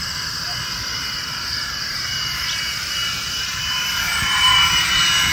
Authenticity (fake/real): fake